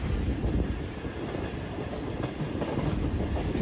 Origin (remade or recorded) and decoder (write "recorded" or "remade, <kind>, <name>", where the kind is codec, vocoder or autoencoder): recorded